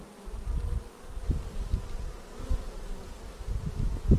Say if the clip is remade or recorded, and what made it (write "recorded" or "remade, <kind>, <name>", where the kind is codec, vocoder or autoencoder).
recorded